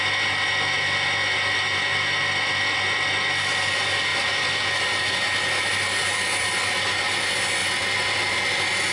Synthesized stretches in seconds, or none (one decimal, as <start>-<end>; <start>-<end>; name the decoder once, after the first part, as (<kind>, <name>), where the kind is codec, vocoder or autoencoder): none